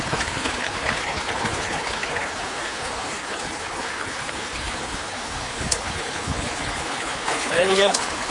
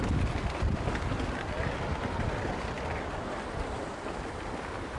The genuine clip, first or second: second